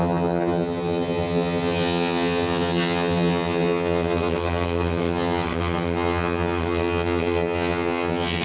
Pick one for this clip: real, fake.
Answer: fake